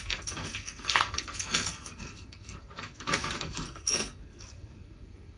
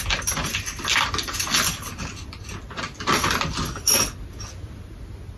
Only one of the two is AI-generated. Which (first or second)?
first